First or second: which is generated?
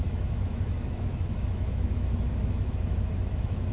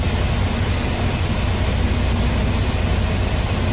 first